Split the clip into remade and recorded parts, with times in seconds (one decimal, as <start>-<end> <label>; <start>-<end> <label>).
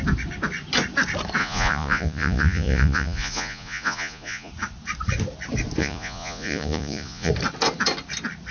0.0-1.4 recorded; 1.4-4.5 remade; 4.5-5.8 recorded; 5.8-7.3 remade; 7.3-8.5 recorded